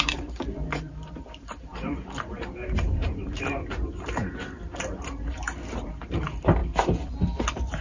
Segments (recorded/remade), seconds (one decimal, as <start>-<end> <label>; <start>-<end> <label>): 0.0-4.2 remade; 4.2-4.8 recorded; 4.8-7.8 remade